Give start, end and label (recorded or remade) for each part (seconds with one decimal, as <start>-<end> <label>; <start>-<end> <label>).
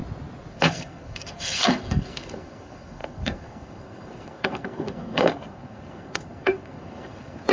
0.0-0.5 recorded; 0.5-7.5 remade